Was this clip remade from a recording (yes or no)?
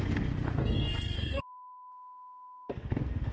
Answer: yes